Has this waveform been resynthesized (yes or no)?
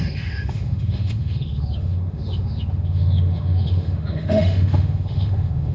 yes